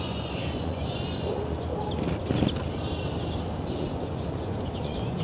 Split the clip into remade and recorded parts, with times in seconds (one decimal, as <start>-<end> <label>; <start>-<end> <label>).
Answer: 0.0-1.7 remade; 1.7-3.7 recorded; 3.7-5.2 remade